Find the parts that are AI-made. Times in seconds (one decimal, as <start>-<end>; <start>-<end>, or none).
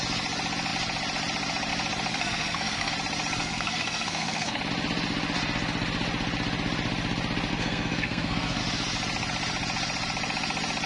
2.1-2.9; 3.4-4.6; 7.5-8.6